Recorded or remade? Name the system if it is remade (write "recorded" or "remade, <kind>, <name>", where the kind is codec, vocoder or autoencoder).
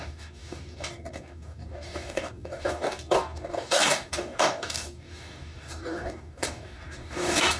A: remade, codec, DAC